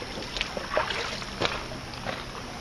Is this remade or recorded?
recorded